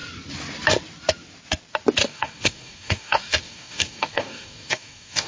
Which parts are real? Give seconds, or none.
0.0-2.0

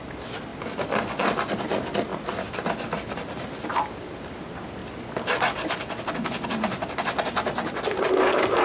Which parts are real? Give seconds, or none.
0.0-8.6

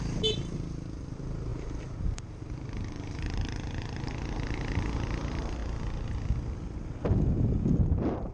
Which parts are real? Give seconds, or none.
5.6-7.9

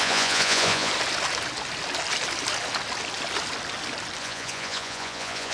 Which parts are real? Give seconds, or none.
0.9-4.2

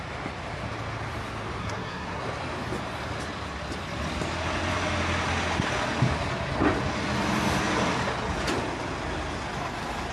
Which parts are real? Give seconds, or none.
0.0-1.6; 2.2-10.1